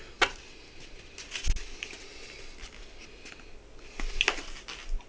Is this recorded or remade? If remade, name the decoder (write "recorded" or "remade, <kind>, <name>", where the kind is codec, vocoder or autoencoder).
recorded